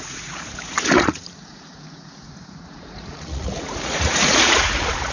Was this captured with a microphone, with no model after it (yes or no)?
no